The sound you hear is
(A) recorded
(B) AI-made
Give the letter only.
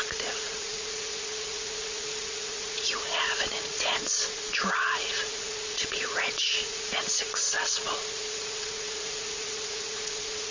B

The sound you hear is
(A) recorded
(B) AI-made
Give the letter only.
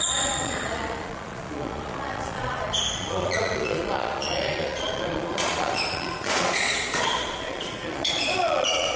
B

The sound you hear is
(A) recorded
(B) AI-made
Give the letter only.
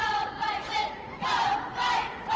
B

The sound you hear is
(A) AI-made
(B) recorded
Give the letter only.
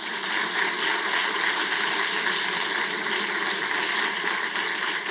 B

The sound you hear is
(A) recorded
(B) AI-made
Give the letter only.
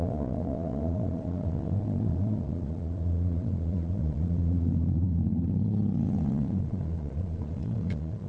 B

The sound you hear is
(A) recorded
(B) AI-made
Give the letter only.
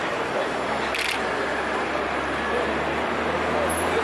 A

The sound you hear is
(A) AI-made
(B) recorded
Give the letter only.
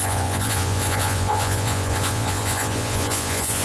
A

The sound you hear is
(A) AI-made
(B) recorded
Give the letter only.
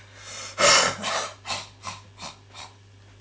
B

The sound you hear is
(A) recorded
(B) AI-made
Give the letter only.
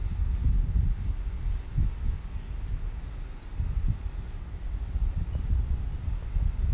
A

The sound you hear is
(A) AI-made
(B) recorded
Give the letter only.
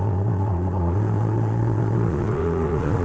A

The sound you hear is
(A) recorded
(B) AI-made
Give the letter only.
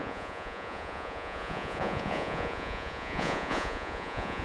B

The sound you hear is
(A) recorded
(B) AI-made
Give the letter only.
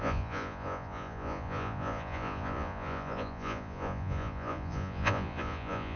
B